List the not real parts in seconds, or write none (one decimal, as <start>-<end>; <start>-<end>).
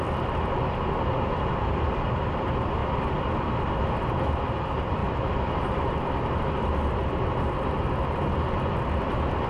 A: none